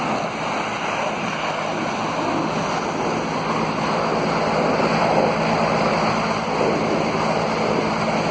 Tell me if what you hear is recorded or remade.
recorded